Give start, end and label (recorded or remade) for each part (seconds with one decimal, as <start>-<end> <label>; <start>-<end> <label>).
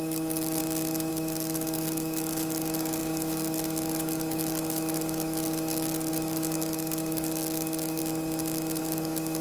0.0-0.6 remade; 0.6-1.1 recorded; 1.1-8.0 remade; 8.0-8.8 recorded; 8.8-9.4 remade